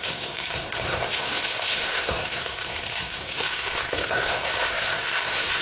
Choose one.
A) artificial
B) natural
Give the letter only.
A